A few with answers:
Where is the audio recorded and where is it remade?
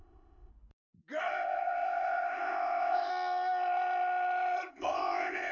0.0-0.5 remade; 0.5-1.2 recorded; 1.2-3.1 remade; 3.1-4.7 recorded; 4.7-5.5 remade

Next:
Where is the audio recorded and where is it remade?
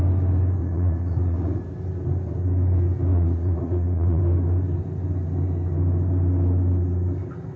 0.0-0.6 recorded; 0.6-1.6 remade; 1.6-3.1 recorded; 3.1-4.2 remade; 4.2-7.6 recorded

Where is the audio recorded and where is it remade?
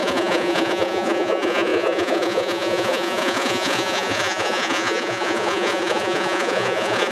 0.0-7.1 remade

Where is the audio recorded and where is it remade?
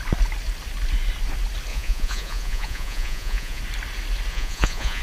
0.0-1.7 recorded; 1.7-3.6 remade; 3.6-4.3 recorded; 4.3-5.0 remade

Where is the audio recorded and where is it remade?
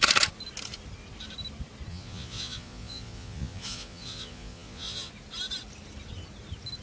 0.0-1.9 recorded; 1.9-5.1 remade; 5.1-6.8 recorded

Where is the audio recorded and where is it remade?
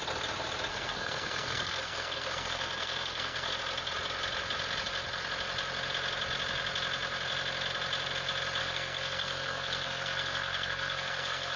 0.0-0.7 recorded; 0.7-3.5 remade; 3.5-8.6 recorded; 8.6-11.6 remade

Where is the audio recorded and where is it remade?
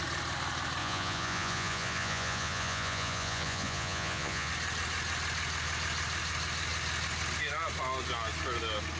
0.0-0.8 recorded; 0.8-4.5 remade; 4.5-9.0 recorded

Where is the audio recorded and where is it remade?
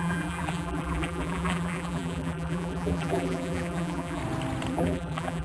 0.0-4.2 remade; 4.2-4.7 recorded; 4.7-5.4 remade